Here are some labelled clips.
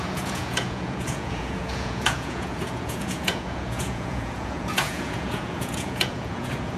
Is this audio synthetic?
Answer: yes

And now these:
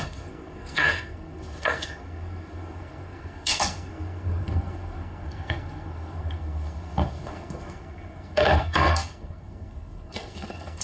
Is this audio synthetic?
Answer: yes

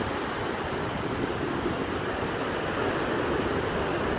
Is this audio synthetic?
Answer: no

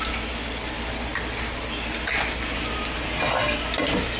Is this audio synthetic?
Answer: no